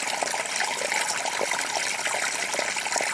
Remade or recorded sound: recorded